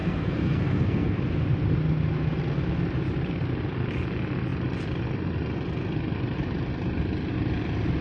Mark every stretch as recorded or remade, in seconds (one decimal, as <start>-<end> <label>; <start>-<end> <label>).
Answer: 0.0-1.2 remade; 1.2-8.0 recorded